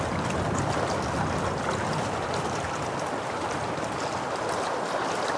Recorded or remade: recorded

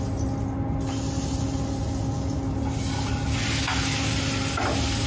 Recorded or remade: recorded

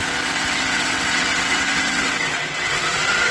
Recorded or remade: remade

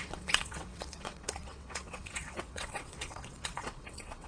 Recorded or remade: remade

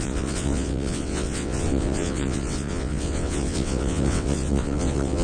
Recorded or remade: remade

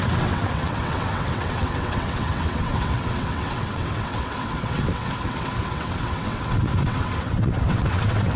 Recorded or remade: remade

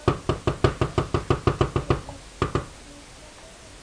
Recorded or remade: recorded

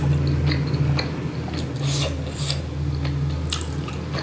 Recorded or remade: recorded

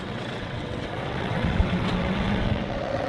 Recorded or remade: remade